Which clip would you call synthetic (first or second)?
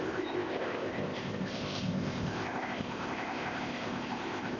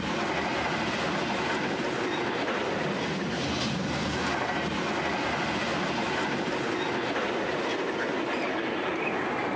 first